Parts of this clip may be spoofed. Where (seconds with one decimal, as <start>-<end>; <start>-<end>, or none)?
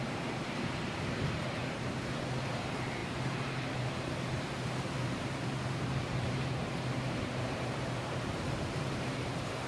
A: 0.0-1.6; 2.5-9.7